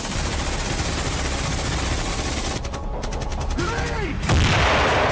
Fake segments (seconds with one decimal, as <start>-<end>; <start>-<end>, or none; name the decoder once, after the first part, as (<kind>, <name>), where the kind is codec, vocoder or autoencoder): none